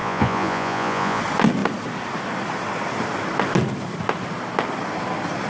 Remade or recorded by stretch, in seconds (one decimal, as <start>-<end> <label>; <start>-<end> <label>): 0.0-1.2 remade; 1.2-5.5 recorded

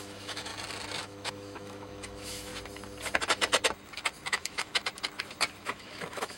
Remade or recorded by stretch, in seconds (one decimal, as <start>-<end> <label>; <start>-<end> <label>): 0.0-0.5 remade; 0.5-1.0 recorded; 1.0-2.5 remade; 2.5-4.3 recorded; 4.3-4.8 remade; 4.8-5.6 recorded; 5.6-6.4 remade